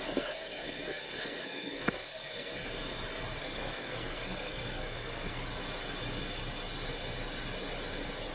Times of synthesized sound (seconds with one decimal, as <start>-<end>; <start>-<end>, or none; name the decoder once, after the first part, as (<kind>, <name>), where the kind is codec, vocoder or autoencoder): 0.0-2.6 (codec, SNAC); 3.4-5.4